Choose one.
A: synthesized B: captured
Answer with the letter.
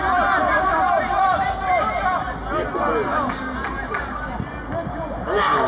B